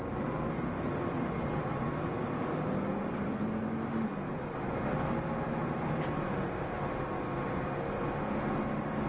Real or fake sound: real